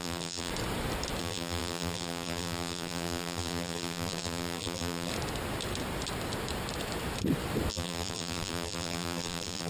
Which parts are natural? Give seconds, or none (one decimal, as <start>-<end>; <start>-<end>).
0.5-1.2; 5.1-7.7